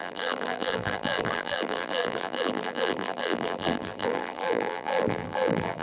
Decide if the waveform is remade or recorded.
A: remade